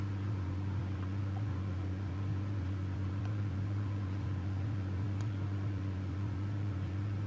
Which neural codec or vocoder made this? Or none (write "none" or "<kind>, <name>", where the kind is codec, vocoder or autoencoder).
vocoder, Vocos